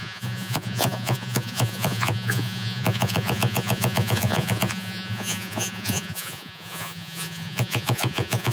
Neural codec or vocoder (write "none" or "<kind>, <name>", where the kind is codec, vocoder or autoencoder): vocoder, Vocos